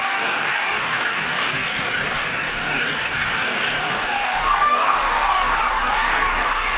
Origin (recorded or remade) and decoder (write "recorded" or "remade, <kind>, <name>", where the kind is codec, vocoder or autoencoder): remade, codec, DAC